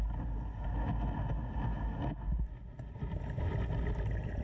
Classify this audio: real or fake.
real